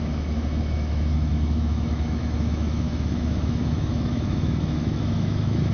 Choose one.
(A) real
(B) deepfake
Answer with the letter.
B